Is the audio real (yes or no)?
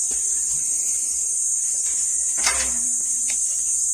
no